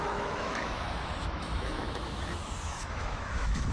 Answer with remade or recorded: remade